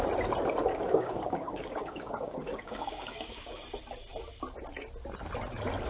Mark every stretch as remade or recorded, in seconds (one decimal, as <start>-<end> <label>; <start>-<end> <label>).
0.0-0.7 recorded; 0.7-3.6 remade; 3.6-5.9 recorded